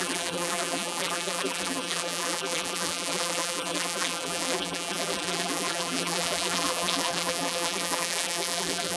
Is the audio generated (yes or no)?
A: yes